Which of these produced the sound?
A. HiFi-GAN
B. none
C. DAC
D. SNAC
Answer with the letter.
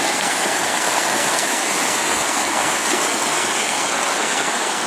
D